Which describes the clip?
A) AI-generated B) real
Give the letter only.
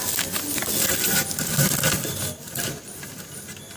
B